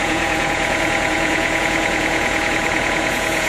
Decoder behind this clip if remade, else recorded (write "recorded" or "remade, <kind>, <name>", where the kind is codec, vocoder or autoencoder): remade, vocoder, Vocos